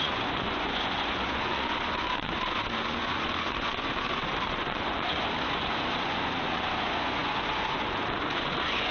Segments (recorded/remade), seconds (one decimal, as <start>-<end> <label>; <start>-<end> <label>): 0.0-8.9 remade